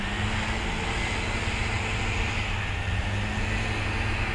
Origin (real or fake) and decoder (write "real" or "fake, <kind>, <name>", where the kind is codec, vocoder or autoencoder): real